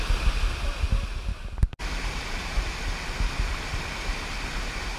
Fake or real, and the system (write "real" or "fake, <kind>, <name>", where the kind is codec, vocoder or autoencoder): real